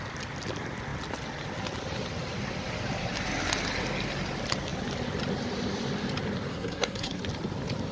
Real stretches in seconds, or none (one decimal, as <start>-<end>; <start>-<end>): 0.0-6.5; 7.2-7.9